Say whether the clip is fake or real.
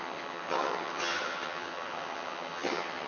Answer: fake